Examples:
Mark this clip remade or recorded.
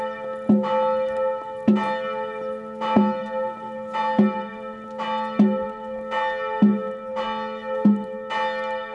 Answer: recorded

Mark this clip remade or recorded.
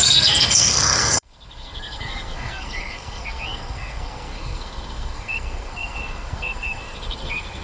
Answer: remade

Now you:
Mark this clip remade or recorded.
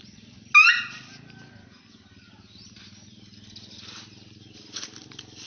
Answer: recorded